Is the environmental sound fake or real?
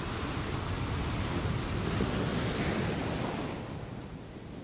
real